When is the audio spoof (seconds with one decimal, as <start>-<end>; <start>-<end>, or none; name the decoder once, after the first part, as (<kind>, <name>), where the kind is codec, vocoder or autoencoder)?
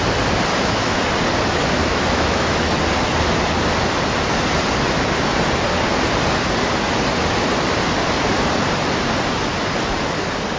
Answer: 0.5-1.0 (autoencoder, DAC-VAE); 1.8-2.6